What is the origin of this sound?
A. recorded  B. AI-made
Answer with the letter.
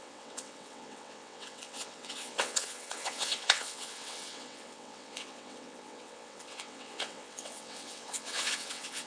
B